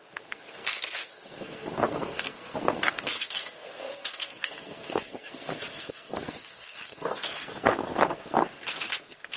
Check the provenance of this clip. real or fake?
fake